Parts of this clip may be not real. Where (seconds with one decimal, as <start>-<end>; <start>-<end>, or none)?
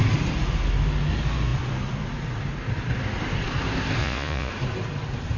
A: 4.0-4.5